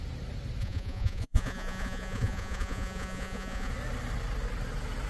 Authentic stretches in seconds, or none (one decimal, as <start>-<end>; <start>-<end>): 0.0-0.6; 3.7-5.1